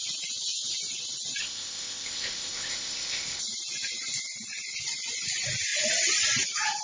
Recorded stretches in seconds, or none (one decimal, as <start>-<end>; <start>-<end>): 0.0-1.4; 3.4-6.8